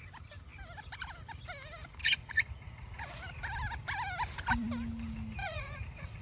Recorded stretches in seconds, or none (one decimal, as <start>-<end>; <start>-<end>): 0.0-2.0; 3.2-5.4